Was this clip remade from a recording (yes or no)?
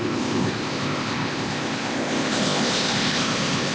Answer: yes